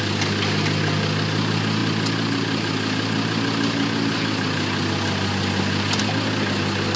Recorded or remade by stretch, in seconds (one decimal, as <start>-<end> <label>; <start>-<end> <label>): 0.0-7.0 recorded